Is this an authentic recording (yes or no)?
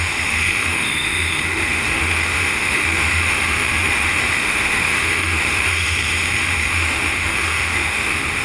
no